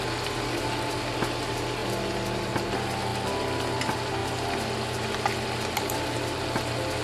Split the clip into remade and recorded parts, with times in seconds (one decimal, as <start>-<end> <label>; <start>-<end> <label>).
0.0-1.8 recorded; 1.8-2.5 remade; 2.5-7.0 recorded